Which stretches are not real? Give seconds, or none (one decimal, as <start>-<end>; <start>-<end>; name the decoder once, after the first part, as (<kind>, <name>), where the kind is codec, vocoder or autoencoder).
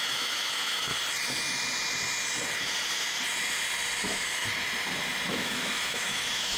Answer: 0.0-0.9 (autoencoder, DAC-VAE); 4.0-4.4; 5.3-6.6